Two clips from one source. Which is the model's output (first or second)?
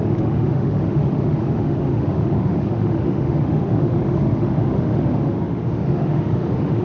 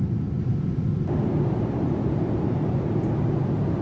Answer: first